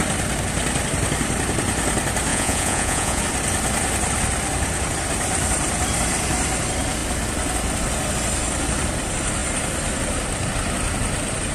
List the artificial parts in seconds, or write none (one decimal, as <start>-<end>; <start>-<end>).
2.3-3.2